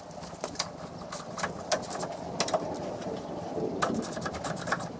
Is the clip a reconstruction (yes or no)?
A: no